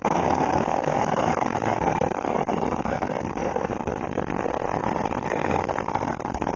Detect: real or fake fake